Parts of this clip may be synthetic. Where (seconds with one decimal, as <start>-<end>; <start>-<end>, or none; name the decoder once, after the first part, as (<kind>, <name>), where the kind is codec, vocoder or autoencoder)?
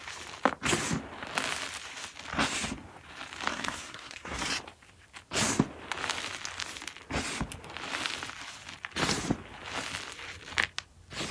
3.5-4.4 (codec, SNAC)